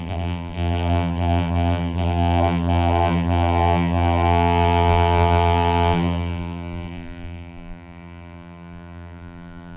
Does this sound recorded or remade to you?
remade